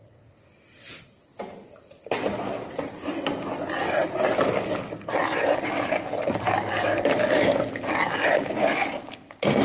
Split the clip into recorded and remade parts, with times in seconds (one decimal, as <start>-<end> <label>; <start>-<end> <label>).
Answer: 0.0-9.6 recorded